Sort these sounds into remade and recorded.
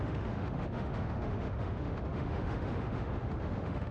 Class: remade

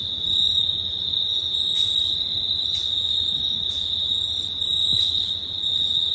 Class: recorded